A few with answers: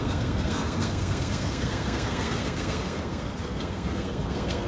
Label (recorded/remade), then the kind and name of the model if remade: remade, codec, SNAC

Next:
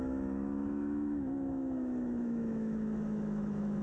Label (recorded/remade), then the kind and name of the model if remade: remade, autoencoder, DAC-VAE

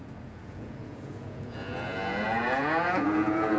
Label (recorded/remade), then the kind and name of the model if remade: remade, vocoder, Vocos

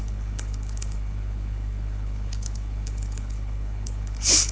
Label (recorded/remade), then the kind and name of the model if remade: remade, codec, HILCodec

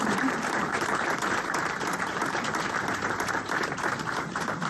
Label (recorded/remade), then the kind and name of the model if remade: remade, vocoder, BigVGAN v2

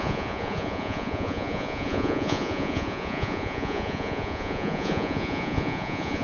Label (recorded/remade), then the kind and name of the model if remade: remade, vocoder, Vocos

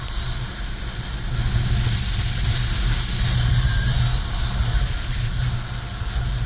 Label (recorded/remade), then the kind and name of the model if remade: recorded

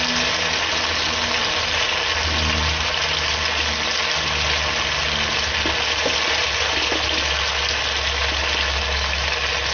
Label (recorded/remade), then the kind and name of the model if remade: recorded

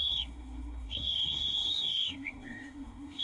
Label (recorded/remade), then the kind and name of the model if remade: remade, codec, SNAC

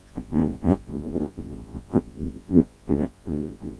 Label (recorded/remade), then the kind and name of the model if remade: remade, vocoder, Vocos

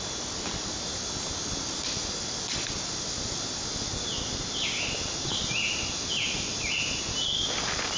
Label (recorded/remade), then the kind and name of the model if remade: recorded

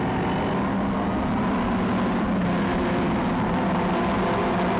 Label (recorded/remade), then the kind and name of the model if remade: recorded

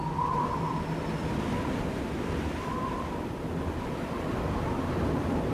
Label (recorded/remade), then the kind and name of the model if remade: recorded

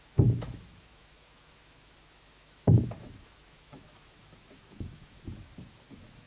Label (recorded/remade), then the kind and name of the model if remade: remade, autoencoder, DAC-VAE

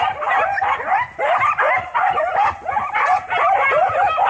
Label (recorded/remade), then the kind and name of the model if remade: recorded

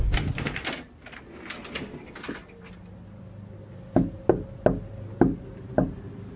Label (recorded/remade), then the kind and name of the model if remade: recorded